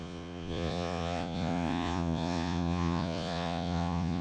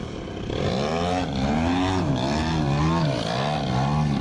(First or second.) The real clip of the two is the second